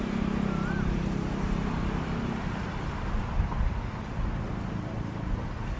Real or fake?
real